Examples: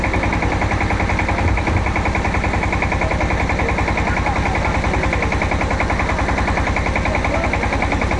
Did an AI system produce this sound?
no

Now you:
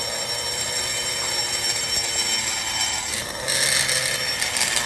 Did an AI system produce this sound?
no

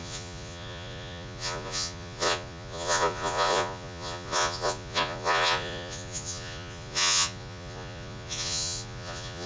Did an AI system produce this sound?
yes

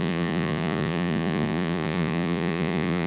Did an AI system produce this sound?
yes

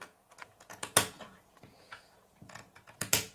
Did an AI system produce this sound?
yes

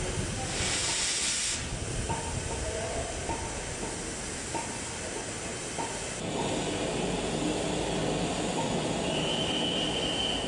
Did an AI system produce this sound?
no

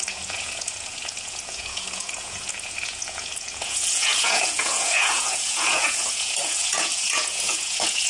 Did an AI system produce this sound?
yes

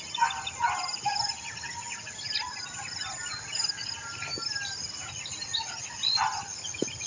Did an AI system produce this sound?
no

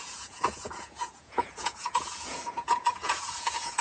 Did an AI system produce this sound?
yes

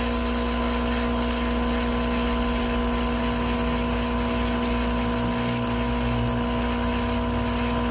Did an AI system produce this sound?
no